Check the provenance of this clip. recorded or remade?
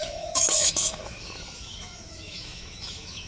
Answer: remade